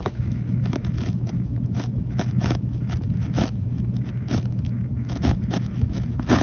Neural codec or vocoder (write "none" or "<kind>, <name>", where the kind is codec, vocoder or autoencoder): autoencoder, DAC-VAE